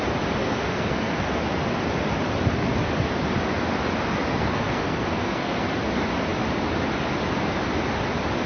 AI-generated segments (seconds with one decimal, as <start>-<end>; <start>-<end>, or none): 0.4-1.3; 4.3-5.7